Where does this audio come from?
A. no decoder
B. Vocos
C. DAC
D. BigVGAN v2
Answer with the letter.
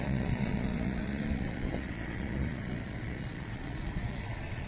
B